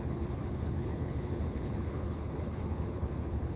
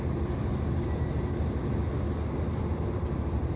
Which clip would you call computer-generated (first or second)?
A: first